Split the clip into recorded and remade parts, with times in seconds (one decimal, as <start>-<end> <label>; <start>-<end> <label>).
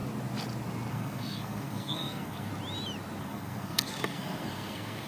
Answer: 0.0-0.9 recorded; 0.9-2.5 remade; 2.5-3.2 recorded; 3.2-5.1 remade